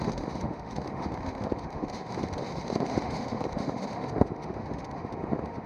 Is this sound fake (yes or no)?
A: yes